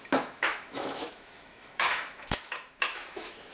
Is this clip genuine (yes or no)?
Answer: no